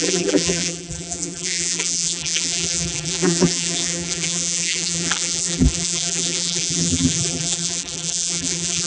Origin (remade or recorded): remade